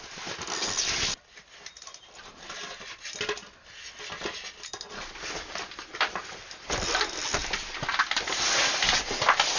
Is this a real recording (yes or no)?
yes